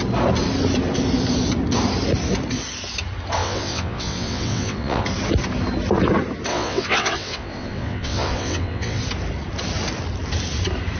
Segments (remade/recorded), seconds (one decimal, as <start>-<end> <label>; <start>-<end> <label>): 0.0-3.4 recorded; 3.4-5.0 remade; 5.0-6.5 recorded; 6.5-9.0 remade; 9.0-11.0 recorded